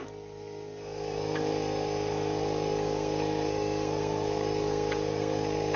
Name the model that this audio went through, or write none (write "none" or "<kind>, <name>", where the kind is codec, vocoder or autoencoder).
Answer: codec, SNAC